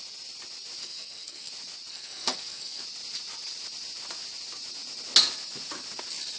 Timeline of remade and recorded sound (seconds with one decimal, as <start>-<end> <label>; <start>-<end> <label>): 0.0-0.8 recorded; 0.8-1.5 remade; 1.5-1.9 recorded; 1.9-2.8 remade; 2.8-6.4 recorded